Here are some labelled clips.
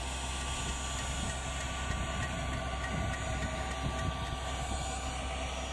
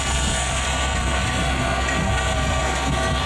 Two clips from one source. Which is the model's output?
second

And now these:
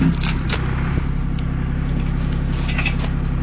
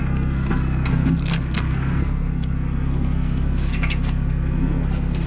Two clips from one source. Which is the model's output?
second